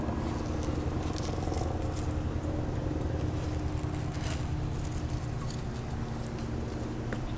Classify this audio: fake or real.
real